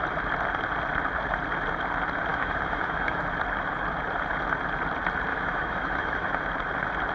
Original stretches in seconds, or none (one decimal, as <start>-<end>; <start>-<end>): 0.0-2.3; 3.2-5.3; 6.4-7.1